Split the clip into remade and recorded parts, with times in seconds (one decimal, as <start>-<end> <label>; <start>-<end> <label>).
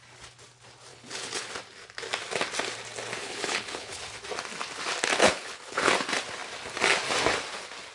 0.0-0.9 recorded; 0.9-1.5 remade; 1.5-3.2 recorded; 3.2-4.0 remade; 4.0-5.2 recorded; 5.2-5.9 remade; 5.9-7.9 recorded